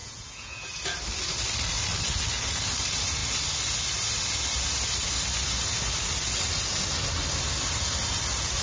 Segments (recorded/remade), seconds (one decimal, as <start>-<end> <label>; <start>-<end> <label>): 0.0-0.8 remade; 0.8-8.6 recorded